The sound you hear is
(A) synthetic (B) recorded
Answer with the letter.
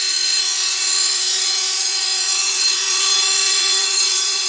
A